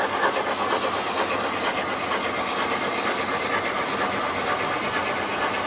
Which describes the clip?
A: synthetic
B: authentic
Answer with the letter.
B